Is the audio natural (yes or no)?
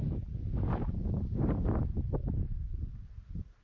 yes